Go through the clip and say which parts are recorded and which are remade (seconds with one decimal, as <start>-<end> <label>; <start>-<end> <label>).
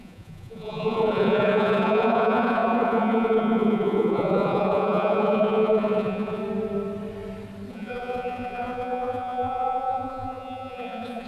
0.0-6.4 remade; 6.4-7.7 recorded; 7.7-11.3 remade